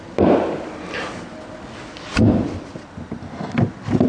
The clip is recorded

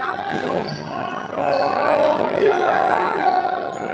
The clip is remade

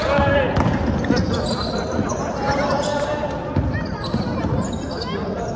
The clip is recorded